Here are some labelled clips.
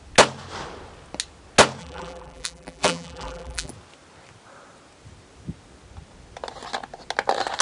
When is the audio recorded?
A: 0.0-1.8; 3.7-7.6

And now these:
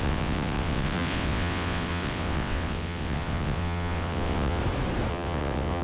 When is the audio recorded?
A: 4.6-5.1

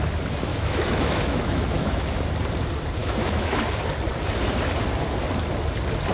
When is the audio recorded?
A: 0.0-0.5; 2.1-3.0; 3.5-6.1

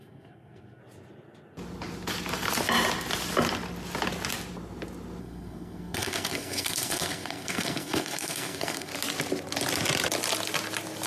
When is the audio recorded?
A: 0.8-5.2; 8.9-11.1